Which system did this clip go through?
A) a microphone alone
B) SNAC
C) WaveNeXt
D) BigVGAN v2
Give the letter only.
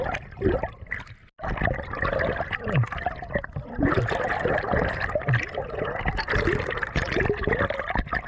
A